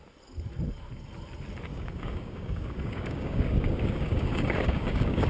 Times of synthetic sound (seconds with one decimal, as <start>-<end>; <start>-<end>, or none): 1.7-5.3